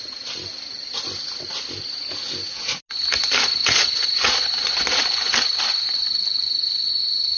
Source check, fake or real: real